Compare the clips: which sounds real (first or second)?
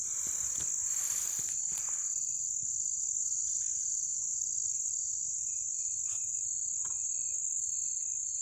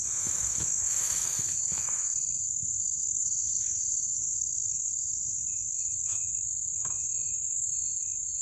first